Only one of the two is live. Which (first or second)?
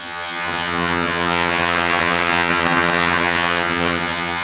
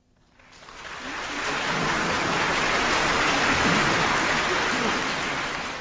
second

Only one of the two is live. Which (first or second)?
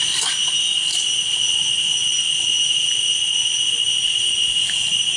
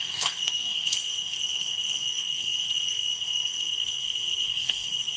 first